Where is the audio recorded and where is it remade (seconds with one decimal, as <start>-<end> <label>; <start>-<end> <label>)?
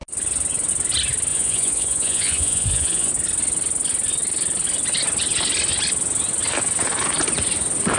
0.0-1.3 recorded; 1.3-3.1 remade; 3.1-8.0 recorded